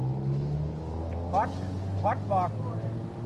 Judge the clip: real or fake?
real